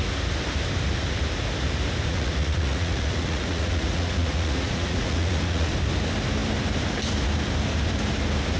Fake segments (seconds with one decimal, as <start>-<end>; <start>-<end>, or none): 2.1-5.7